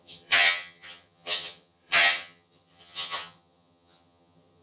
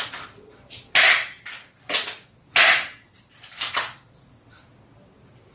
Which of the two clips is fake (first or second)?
first